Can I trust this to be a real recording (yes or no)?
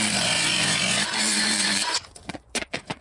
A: no